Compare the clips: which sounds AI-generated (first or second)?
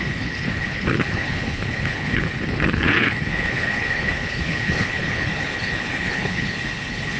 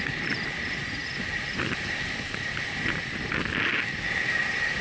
first